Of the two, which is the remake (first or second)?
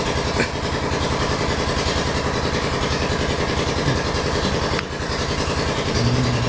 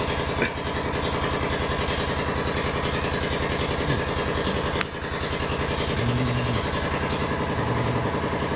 first